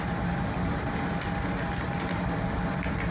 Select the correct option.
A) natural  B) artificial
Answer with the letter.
A